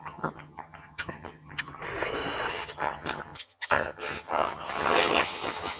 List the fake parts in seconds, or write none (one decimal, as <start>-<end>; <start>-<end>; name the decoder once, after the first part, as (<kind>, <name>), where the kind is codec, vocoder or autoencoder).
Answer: 0.0-1.8 (vocoder, HiFi-GAN); 2.5-5.8